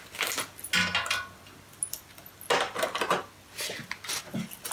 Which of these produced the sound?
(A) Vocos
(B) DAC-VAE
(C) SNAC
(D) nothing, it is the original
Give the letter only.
D